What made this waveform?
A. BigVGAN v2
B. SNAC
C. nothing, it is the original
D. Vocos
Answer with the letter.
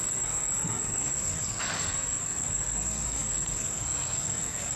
B